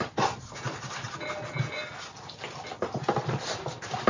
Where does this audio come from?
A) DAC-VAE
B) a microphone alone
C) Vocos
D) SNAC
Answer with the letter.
B